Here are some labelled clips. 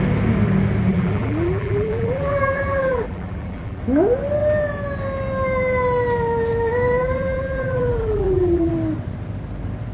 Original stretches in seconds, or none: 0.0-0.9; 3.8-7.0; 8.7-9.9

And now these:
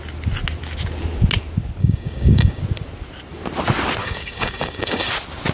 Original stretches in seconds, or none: 0.0-1.8; 2.6-4.0; 5.1-5.5

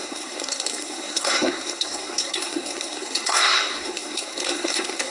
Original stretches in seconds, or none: none

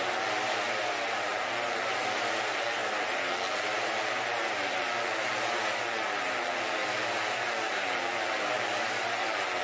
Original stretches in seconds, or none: 0.0-9.6

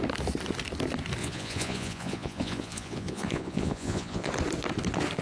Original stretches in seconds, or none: 0.0-1.2; 4.3-5.2

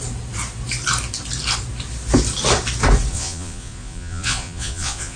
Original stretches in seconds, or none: 0.0-3.1

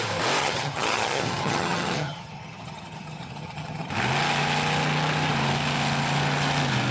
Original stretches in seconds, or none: 0.0-0.4; 3.9-6.9

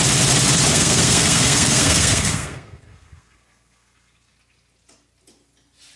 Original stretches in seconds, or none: 0.0-0.7; 4.3-6.0